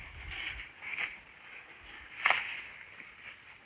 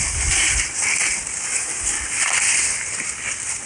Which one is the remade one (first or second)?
second